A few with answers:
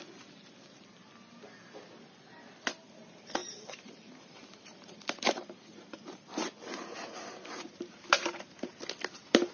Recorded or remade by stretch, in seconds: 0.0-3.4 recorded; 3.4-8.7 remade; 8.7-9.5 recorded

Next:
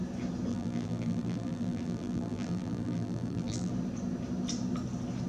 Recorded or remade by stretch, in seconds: 0.0-0.5 recorded; 0.5-3.7 remade; 3.7-5.3 recorded

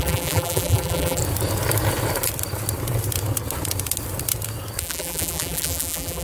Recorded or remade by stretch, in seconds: 0.0-1.2 remade; 1.2-4.8 recorded; 4.8-6.2 remade